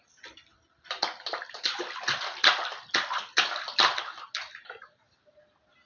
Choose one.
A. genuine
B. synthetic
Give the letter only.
A